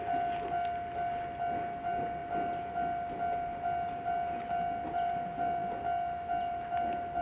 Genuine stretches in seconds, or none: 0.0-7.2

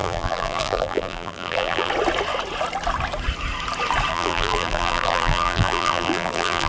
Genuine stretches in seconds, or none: 1.9-4.1

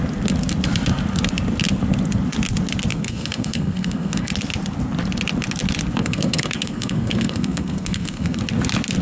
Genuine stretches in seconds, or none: 0.0-2.9; 4.3-6.0; 8.4-9.0

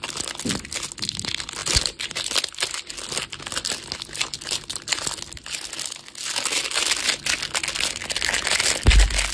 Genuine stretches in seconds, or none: 0.0-1.6; 5.2-9.3

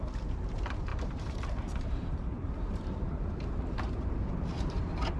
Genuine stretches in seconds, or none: none

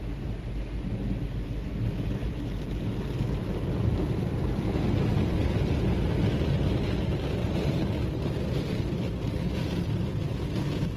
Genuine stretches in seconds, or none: 0.0-7.4; 7.9-11.0

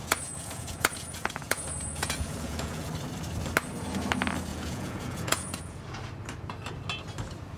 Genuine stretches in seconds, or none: 2.9-4.5; 5.8-7.6

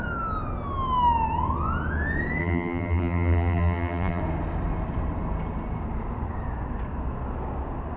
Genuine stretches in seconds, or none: 0.0-2.4; 4.2-8.0